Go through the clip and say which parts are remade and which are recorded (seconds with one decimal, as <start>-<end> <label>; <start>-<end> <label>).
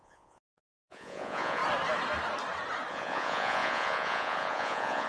0.0-1.6 remade; 1.6-2.9 recorded; 2.9-5.1 remade